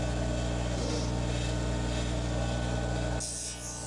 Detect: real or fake real